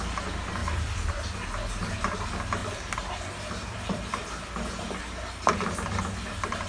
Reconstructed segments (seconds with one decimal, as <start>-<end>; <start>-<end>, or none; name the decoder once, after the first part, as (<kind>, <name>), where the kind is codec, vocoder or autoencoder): 0.6-1.1 (vocoder, BigVGAN v2); 2.6-4.2

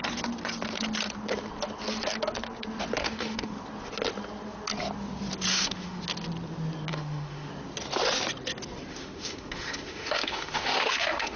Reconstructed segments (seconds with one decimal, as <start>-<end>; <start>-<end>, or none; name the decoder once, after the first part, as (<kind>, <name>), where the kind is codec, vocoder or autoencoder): 3.0-3.5 (autoencoder, DAC-VAE); 5.5-6.0; 6.9-7.5; 8.9-11.4

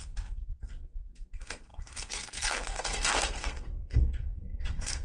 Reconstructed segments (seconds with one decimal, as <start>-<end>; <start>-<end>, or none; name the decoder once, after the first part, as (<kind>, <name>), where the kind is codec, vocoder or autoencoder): 0.0-5.0 (codec, SNAC)

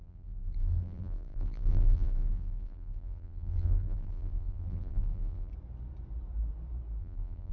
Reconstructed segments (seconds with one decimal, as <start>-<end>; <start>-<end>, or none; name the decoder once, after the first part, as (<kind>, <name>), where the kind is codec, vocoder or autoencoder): 0.0-5.5 (vocoder, BigVGAN v2); 7.0-7.5

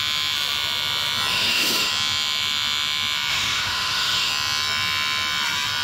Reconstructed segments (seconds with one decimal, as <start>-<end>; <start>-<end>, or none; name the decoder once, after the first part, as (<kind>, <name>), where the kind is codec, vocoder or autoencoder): 1.3-1.9 (autoencoder, DAC-VAE); 3.3-4.3

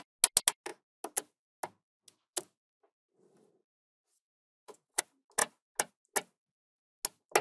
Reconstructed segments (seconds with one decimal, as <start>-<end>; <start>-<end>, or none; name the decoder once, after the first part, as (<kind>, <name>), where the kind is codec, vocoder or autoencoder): 4.3-5.0 (vocoder, Vocos)

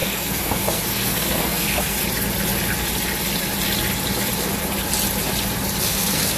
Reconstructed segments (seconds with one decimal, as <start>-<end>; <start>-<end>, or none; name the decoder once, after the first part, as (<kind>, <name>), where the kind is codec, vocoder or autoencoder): 0.0-2.0 (codec, SNAC); 5.8-6.4

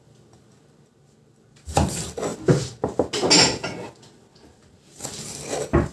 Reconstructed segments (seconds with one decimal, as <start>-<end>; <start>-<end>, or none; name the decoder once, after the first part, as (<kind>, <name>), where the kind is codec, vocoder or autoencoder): none